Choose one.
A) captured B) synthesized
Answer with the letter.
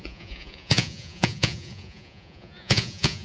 B